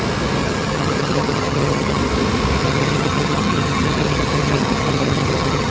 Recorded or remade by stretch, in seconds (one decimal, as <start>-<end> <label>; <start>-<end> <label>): 0.0-0.4 recorded; 0.4-2.0 remade; 2.0-2.6 recorded; 2.6-5.7 remade